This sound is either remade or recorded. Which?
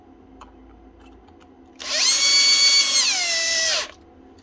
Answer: recorded